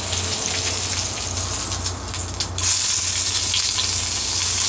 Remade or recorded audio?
recorded